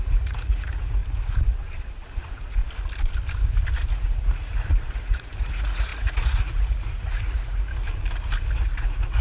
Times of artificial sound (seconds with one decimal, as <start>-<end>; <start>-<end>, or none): 0.0-1.0; 2.2-2.6; 3.9-7.7; 8.4-9.2